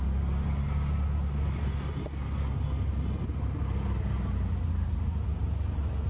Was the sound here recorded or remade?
recorded